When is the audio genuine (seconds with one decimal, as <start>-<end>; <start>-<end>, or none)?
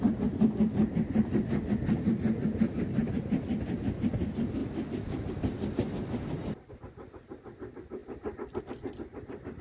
0.0-9.6